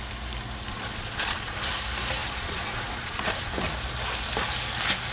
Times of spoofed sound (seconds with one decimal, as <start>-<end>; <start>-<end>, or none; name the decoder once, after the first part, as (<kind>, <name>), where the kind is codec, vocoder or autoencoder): 0.7-1.7 (vocoder, Vocos); 2.2-3.5